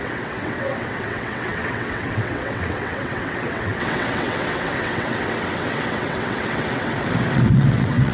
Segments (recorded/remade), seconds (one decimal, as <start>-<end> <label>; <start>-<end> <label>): 0.0-8.1 remade